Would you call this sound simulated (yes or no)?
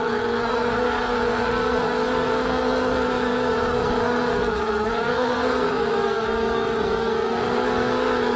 yes